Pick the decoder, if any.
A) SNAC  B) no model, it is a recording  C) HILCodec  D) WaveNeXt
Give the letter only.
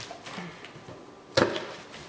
B